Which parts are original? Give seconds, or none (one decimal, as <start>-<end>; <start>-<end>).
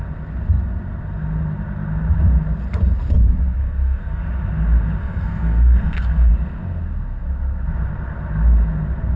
0.0-3.6; 4.2-5.0; 6.3-9.2